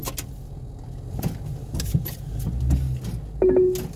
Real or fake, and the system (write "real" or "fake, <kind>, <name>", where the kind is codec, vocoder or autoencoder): real